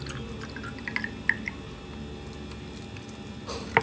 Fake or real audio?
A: real